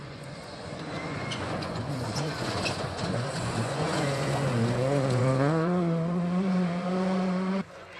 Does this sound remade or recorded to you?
remade